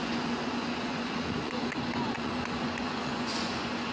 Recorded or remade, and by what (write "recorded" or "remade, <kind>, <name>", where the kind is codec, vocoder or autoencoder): remade, vocoder, Vocos